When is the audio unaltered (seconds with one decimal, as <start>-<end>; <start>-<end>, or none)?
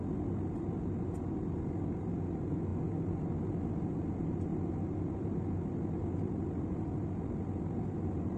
0.0-8.4